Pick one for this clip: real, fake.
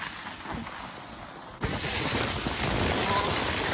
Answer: real